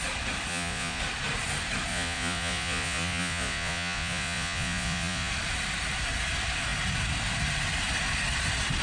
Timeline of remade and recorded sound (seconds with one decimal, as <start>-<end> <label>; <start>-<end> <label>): 0.0-0.5 recorded; 0.5-1.0 remade; 1.0-1.9 recorded; 1.9-5.3 remade; 5.3-8.8 recorded